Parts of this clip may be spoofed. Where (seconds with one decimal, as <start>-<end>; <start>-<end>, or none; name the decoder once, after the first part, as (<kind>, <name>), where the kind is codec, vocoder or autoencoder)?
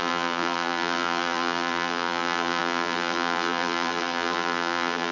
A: 0.0-5.1 (vocoder, BigVGAN v2)